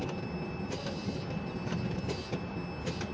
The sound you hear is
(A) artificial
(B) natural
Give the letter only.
B